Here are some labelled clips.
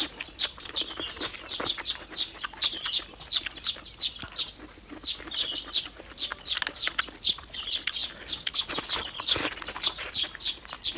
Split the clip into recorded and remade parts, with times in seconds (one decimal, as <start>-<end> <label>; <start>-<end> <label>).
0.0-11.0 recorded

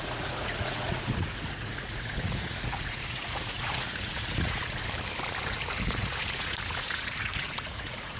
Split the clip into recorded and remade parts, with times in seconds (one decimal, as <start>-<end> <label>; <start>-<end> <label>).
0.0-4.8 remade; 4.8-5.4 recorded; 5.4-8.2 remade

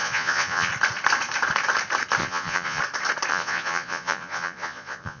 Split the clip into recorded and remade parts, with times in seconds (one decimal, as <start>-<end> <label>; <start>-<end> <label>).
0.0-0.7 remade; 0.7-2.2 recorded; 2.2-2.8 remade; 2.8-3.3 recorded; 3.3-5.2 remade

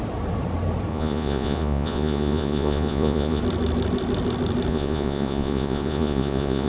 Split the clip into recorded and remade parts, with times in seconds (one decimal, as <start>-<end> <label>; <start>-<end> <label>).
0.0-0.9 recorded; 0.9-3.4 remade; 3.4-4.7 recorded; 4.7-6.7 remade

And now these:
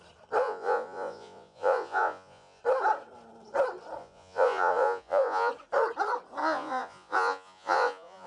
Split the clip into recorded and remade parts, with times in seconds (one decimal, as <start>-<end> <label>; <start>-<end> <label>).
0.0-0.4 recorded; 0.4-2.6 remade; 2.6-4.0 recorded; 4.0-5.5 remade; 5.5-6.4 recorded; 6.4-8.3 remade

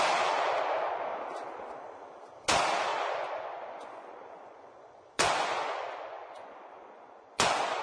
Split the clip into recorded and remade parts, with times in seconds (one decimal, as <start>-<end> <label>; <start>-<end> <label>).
0.0-2.9 recorded; 2.9-7.8 remade

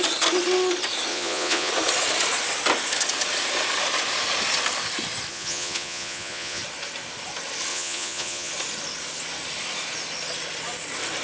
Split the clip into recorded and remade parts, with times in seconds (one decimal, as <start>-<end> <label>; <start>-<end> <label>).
0.0-1.1 recorded; 1.1-1.7 remade; 1.7-5.3 recorded; 5.3-6.6 remade; 6.6-7.7 recorded; 7.7-8.5 remade; 8.5-11.2 recorded

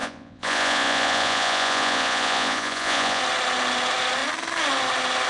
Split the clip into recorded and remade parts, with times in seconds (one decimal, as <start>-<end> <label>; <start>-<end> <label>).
0.0-3.2 remade; 3.2-5.3 recorded